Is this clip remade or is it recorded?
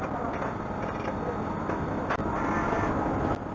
recorded